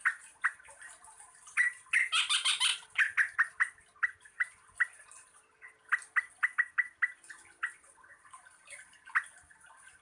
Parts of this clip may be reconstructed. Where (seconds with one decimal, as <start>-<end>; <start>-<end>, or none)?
none